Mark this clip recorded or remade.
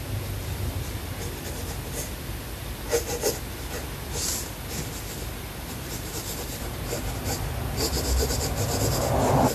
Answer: remade